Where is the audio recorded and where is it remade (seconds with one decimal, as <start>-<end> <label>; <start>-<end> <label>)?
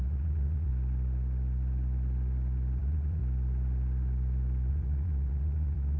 0.0-0.7 remade; 0.7-2.8 recorded; 2.8-3.2 remade; 3.2-4.7 recorded; 4.7-6.0 remade